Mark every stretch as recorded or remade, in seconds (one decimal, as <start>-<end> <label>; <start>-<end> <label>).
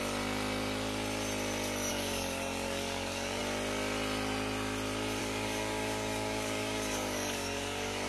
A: 0.0-1.9 recorded; 1.9-3.4 remade; 3.4-5.2 recorded; 5.2-8.1 remade